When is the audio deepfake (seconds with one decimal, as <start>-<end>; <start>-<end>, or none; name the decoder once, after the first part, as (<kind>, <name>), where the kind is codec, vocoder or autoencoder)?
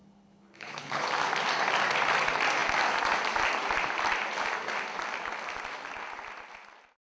0.0-1.1 (codec, HILCodec)